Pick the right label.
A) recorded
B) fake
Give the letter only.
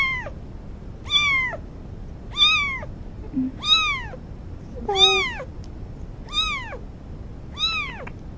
A